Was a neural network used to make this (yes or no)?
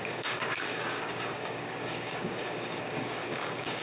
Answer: yes